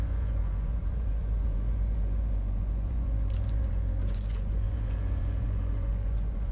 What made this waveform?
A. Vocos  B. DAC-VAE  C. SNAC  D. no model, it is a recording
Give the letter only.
A